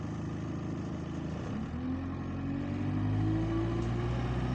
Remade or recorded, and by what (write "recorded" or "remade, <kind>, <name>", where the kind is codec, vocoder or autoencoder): recorded